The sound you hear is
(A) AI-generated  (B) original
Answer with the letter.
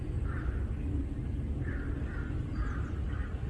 B